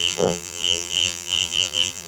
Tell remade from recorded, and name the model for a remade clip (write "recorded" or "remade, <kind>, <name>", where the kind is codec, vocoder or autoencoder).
remade, vocoder, BigVGAN v2